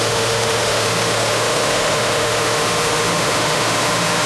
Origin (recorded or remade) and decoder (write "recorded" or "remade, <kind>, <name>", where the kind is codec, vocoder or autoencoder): remade, autoencoder, DAC-VAE